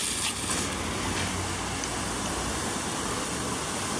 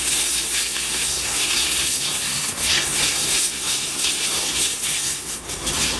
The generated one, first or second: second